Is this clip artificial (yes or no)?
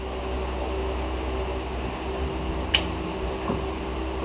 no